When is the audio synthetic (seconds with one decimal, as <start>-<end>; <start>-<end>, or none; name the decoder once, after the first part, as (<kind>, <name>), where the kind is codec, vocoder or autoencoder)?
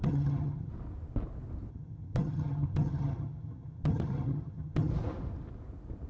0.0-0.7 (vocoder, HiFi-GAN); 1.7-4.9